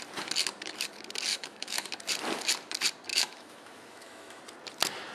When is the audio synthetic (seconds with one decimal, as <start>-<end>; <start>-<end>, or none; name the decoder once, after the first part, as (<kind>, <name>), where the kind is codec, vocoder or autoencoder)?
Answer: 1.3-1.9 (autoencoder, DAC-VAE); 3.1-4.4